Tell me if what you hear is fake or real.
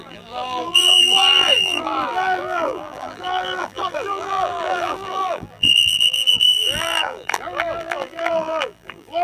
fake